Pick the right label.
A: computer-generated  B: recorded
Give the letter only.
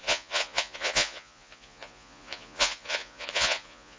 A